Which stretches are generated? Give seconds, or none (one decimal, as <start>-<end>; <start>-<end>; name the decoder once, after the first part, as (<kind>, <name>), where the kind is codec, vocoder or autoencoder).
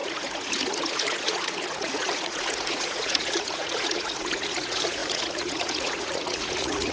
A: 0.0-6.9 (vocoder, Vocos)